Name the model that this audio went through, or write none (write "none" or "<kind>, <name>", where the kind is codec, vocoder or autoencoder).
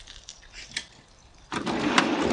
vocoder, BigVGAN v2